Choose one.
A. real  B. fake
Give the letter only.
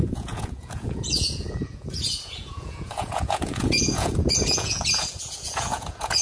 B